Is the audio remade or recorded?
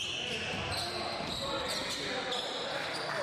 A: recorded